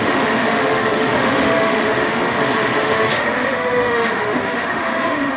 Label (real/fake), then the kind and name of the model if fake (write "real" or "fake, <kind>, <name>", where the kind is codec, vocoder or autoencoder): fake, autoencoder, DAC-VAE